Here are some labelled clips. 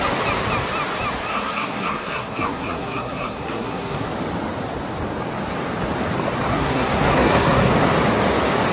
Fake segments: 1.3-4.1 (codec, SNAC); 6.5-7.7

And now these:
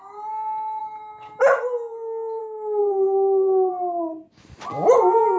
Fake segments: 2.8-3.7 (codec, SNAC)

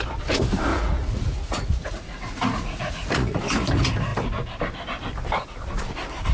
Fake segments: 0.7-3.4 (vocoder, Vocos)